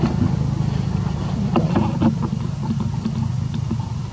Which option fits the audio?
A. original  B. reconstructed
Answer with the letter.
A